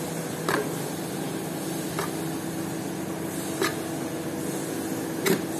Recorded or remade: recorded